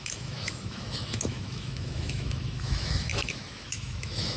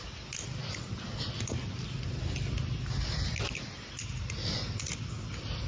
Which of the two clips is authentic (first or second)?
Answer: second